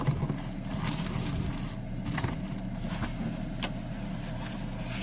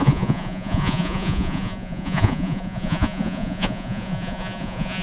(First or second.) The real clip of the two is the first